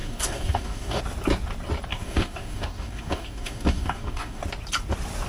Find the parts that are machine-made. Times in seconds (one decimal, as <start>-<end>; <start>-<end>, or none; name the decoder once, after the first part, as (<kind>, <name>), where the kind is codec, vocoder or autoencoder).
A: 0.0-1.0 (codec, DAC); 1.9-4.4